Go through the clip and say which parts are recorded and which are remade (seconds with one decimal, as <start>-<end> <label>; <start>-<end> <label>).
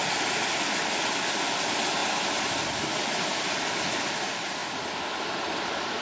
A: 0.0-6.0 recorded